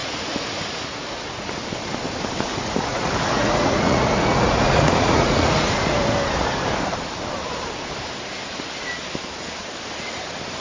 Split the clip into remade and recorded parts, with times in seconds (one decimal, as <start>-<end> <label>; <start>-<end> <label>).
0.0-1.5 remade; 1.5-2.5 recorded; 2.5-6.0 remade; 6.0-10.6 recorded